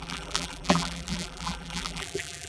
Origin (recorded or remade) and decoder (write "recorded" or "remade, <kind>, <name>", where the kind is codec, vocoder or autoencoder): remade, vocoder, BigVGAN v2